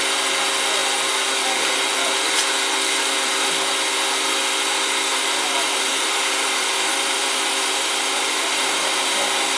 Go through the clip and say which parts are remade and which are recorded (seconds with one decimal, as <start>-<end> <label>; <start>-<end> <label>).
0.0-5.1 recorded; 5.1-9.1 remade; 9.1-9.6 recorded